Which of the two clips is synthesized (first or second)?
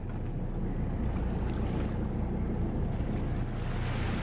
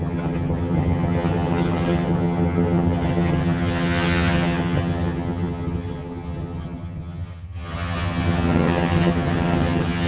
second